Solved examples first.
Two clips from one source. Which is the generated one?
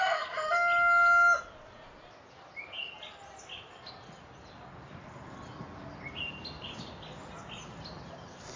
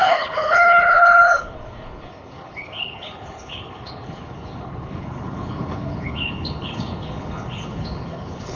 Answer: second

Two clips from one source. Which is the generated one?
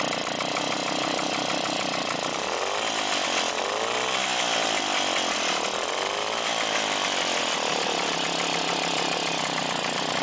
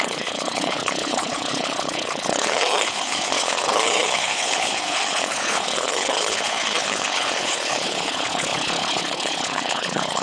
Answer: second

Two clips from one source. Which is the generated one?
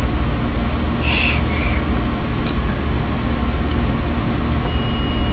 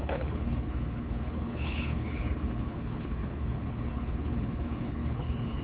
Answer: second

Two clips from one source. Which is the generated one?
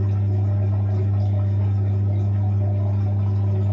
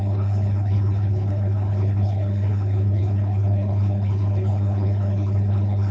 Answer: second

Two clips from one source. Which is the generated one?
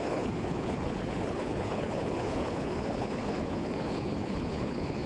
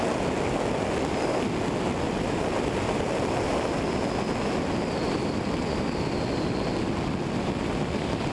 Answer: first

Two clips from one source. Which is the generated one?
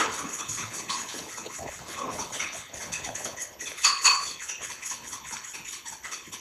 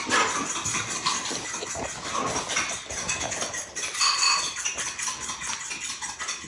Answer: first